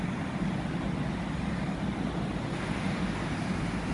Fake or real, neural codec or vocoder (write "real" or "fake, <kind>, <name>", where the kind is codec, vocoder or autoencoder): real